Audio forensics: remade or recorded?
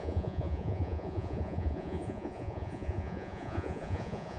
remade